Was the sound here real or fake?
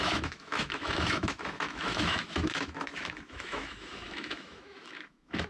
fake